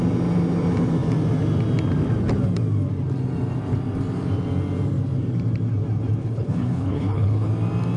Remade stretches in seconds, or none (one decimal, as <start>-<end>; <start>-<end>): 6.2-7.5